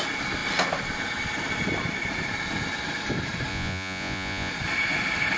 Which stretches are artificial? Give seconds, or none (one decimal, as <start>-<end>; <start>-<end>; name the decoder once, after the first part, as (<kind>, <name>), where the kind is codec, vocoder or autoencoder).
3.5-4.5 (vocoder, Vocos)